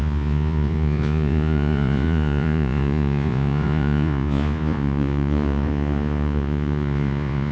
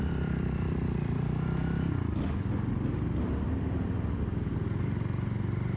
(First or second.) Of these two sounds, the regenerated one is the first